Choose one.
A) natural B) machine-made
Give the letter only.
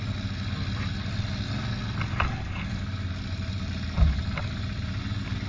A